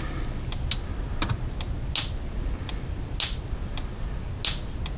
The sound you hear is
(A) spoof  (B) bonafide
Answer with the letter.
B